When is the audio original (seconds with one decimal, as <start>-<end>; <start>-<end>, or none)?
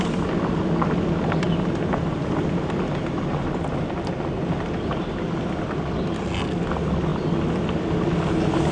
0.0-8.7